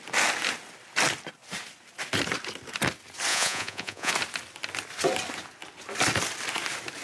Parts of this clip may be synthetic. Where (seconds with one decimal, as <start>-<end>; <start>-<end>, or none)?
3.3-4.1